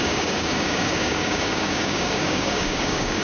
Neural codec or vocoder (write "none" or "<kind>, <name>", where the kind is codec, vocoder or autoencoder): codec, DAC